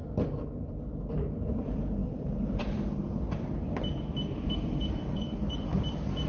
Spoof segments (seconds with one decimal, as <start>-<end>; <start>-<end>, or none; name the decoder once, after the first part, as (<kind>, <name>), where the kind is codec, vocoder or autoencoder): 2.0-5.8 (vocoder, BigVGAN v2)